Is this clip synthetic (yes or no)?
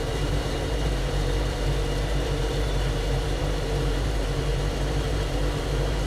yes